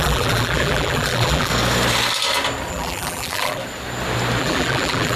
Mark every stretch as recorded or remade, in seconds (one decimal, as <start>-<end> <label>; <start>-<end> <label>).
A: 0.0-1.5 remade; 1.5-2.7 recorded; 2.7-3.6 remade; 3.6-4.4 recorded; 4.4-5.2 remade